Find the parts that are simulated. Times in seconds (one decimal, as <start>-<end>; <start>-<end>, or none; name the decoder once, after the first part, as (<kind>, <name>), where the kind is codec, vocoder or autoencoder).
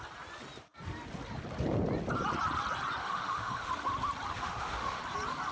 3.0-3.7 (autoencoder, DAC-VAE); 4.3-5.0